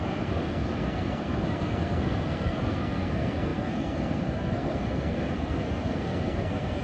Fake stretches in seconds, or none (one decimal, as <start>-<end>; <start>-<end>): 0.0-6.8